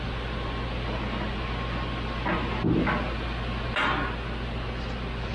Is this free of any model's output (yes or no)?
yes